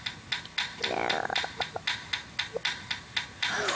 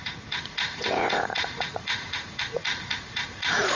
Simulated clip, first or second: second